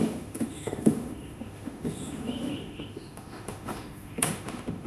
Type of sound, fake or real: fake